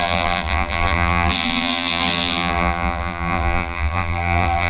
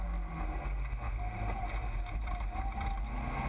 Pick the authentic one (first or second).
second